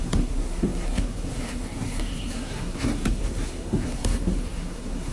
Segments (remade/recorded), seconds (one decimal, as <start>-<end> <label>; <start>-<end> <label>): 0.0-5.1 remade